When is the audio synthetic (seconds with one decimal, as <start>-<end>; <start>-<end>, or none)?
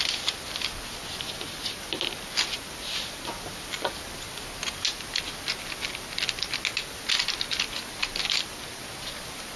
8.0-8.8